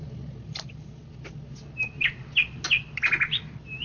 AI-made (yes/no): no